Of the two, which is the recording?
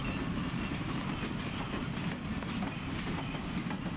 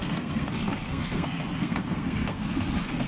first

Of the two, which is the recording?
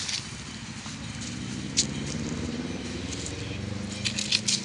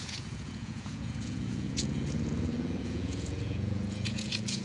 first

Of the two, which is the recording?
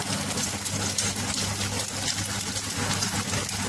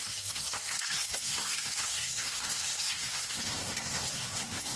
first